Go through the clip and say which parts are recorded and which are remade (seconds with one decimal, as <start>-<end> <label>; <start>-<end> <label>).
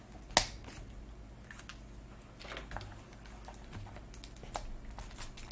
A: 0.0-5.5 recorded